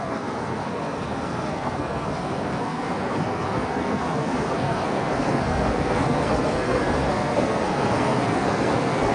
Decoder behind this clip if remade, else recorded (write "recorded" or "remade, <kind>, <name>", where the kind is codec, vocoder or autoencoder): remade, codec, SNAC